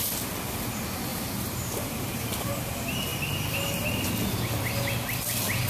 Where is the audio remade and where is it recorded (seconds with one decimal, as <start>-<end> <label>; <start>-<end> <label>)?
0.0-1.1 recorded; 1.1-2.7 remade; 2.7-5.7 recorded